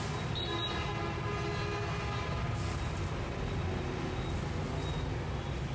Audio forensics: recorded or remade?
recorded